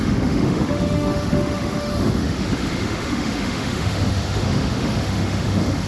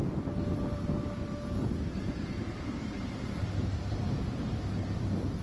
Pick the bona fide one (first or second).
second